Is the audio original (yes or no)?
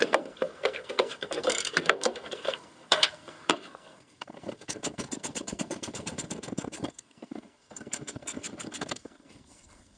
no